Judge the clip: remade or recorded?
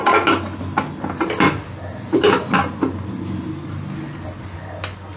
recorded